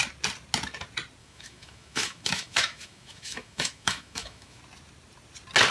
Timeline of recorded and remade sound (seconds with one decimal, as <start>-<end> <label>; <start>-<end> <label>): 0.0-1.2 recorded; 1.2-4.6 remade; 4.6-5.7 recorded